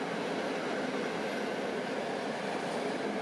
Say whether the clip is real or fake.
real